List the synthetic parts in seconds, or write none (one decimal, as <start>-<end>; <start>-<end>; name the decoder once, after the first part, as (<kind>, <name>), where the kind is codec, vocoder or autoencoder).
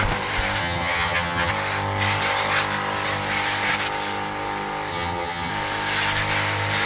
0.6-1.5 (vocoder, HiFi-GAN); 4.9-5.5